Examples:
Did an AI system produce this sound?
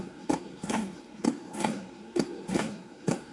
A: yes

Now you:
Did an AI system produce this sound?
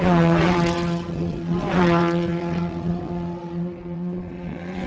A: yes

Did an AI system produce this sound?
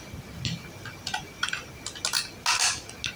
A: no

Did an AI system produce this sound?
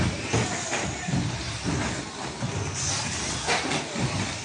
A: no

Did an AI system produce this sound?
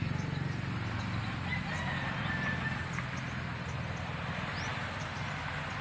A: no